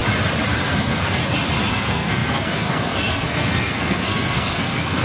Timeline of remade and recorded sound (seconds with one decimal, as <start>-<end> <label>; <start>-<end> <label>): 0.0-0.7 recorded; 0.7-1.2 remade; 1.2-1.7 recorded; 1.7-5.0 remade